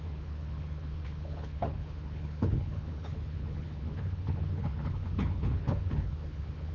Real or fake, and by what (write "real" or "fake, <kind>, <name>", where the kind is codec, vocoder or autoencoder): fake, codec, HILCodec